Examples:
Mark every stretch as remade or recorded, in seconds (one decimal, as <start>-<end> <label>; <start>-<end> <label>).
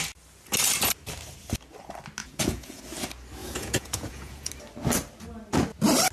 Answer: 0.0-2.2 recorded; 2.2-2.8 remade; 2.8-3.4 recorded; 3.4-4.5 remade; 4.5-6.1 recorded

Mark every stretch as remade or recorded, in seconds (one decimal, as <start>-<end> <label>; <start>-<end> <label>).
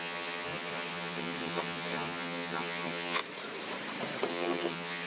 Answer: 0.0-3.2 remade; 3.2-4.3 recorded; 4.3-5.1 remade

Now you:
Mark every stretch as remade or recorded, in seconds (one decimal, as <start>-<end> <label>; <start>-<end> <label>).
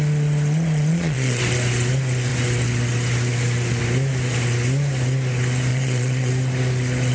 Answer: 0.0-0.9 recorded; 0.9-1.4 remade; 1.4-5.7 recorded; 5.7-6.3 remade; 6.3-7.1 recorded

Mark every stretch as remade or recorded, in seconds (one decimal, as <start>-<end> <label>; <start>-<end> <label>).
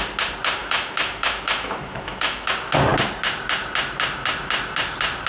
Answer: 0.0-0.6 recorded; 0.6-2.5 remade; 2.5-5.3 recorded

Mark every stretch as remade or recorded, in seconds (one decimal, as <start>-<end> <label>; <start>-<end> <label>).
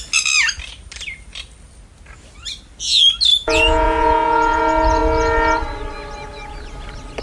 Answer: 0.0-3.4 recorded; 3.4-4.6 remade; 4.6-7.2 recorded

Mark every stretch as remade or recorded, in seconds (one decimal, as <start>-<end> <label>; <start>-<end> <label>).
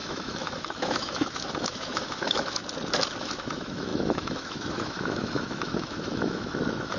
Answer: 0.0-2.6 remade; 2.6-3.2 recorded; 3.2-7.0 remade